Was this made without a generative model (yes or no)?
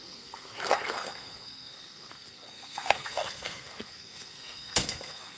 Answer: no